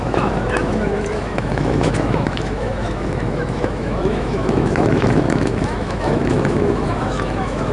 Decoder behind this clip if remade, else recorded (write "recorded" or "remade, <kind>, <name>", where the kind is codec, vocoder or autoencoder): remade, autoencoder, DAC-VAE